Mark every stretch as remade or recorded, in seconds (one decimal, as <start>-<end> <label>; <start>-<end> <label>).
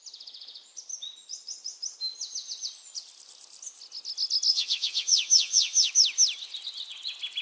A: 0.0-4.5 recorded; 4.5-5.9 remade; 5.9-7.4 recorded